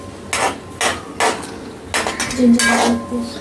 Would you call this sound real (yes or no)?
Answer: yes